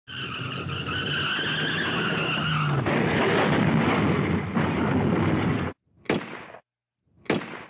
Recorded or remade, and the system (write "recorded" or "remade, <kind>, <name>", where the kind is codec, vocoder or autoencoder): recorded